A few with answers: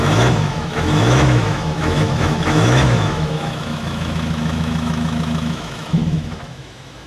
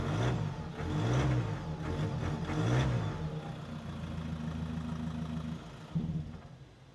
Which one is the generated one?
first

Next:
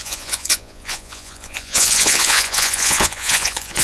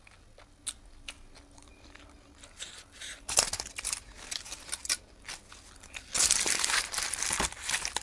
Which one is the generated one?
first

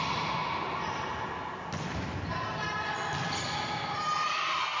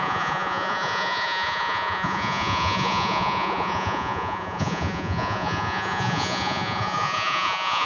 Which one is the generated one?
second